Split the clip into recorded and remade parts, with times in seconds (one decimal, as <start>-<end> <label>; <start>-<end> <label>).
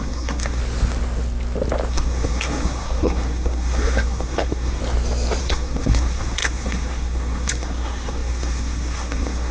0.0-0.6 remade; 0.6-1.9 recorded; 1.9-4.8 remade; 4.8-5.4 recorded; 5.4-9.5 remade